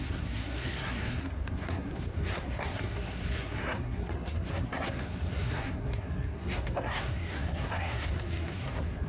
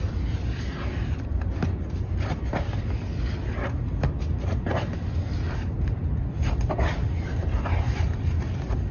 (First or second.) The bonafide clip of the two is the second